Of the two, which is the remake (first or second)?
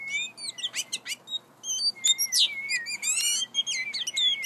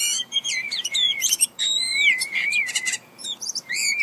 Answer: second